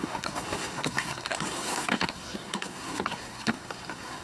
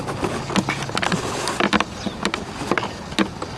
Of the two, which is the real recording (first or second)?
second